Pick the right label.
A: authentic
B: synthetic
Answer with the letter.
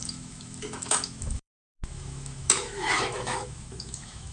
B